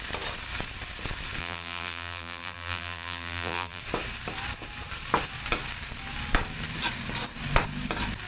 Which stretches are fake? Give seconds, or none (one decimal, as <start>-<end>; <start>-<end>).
1.4-3.8